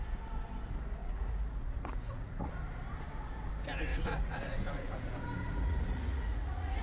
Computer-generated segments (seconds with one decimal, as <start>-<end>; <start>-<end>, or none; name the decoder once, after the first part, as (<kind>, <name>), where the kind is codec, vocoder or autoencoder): 1.0-2.5 (vocoder, Vocos); 3.9-6.8